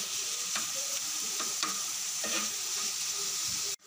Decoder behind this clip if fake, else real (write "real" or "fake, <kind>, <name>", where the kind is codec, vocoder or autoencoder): fake, vocoder, BigVGAN v2